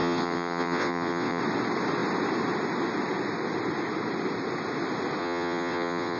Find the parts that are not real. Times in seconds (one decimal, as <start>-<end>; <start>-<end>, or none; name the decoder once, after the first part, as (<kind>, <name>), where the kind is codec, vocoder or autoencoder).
0.0-1.4 (vocoder, WaveNeXt); 5.2-6.2